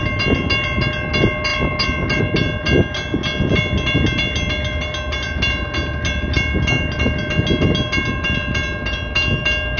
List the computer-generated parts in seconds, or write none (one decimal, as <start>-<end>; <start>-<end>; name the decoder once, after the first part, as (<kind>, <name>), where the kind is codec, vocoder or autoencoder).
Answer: none